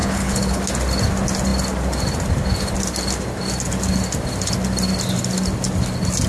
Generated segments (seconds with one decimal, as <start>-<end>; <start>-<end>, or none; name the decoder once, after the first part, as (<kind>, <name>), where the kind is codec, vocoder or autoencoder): 0.0-0.6 (codec, HILCodec)

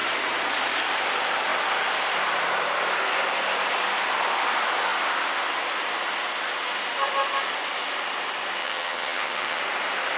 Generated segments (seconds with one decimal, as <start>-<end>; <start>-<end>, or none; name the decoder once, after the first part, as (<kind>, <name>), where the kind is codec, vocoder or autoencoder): 8.6-9.6 (vocoder, HiFi-GAN)

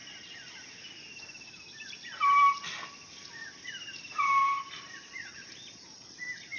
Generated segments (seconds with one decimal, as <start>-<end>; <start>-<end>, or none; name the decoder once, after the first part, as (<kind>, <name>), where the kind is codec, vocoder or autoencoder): 4.0-4.4 (vocoder, BigVGAN v2); 4.9-6.6